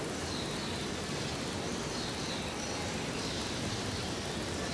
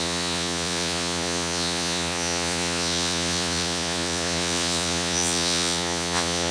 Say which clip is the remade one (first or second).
second